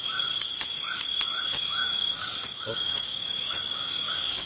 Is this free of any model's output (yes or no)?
no